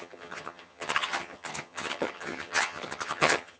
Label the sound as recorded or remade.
remade